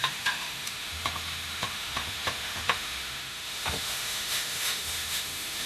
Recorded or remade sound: remade